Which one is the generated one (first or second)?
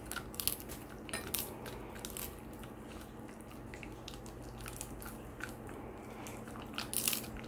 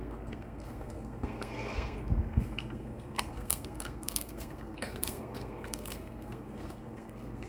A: second